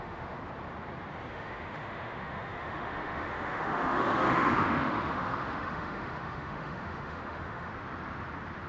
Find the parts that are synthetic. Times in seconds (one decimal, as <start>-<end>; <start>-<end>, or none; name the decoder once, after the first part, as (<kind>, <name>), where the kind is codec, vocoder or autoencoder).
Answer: 0.0-0.4 (autoencoder, DAC-VAE); 1.3-7.7